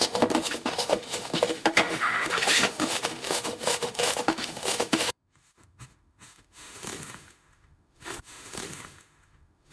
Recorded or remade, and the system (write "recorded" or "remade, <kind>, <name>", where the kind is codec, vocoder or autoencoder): remade, autoencoder, DAC-VAE